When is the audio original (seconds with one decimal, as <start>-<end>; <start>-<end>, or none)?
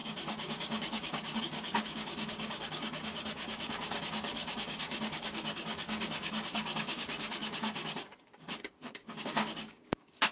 none